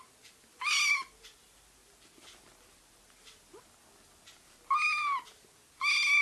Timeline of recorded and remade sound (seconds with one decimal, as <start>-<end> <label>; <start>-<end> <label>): 0.0-6.2 recorded